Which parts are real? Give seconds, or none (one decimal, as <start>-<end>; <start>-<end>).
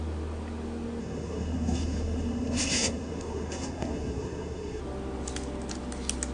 0.0-1.0; 4.8-6.3